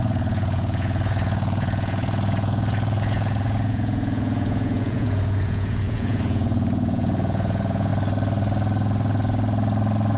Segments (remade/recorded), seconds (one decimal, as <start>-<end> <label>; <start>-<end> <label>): 0.0-7.9 remade; 7.9-10.2 recorded